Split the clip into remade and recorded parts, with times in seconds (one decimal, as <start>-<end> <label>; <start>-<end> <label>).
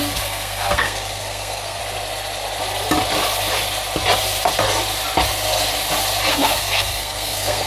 0.0-1.8 remade; 1.8-6.3 recorded; 6.3-7.7 remade